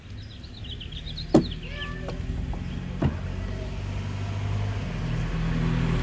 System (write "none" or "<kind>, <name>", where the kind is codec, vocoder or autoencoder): none